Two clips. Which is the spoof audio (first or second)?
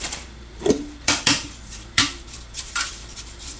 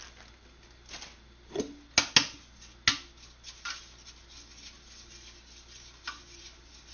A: first